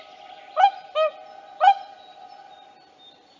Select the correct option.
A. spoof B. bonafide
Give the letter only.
B